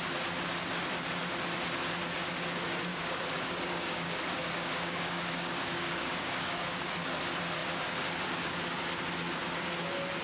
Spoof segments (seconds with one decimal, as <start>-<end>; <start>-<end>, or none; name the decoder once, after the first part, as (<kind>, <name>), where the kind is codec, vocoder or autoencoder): 2.9-6.8 (codec, DAC)